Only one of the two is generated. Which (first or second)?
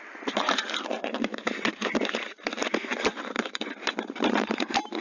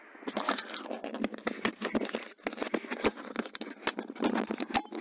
first